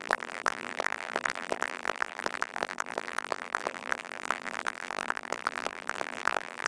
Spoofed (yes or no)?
yes